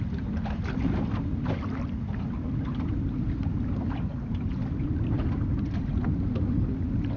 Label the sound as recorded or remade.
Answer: recorded